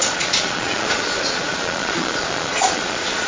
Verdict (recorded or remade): remade